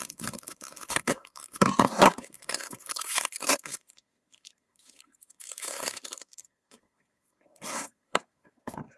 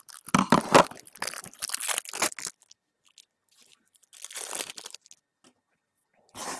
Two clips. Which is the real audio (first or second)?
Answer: second